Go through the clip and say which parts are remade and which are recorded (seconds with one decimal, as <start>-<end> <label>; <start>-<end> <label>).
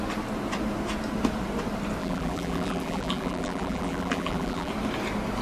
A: 0.0-2.0 recorded; 2.0-4.7 remade; 4.7-5.4 recorded